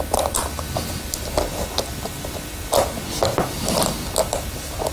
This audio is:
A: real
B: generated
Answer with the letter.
A